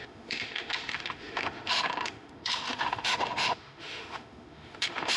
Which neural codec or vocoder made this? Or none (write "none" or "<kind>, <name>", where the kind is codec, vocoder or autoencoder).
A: autoencoder, DAC-VAE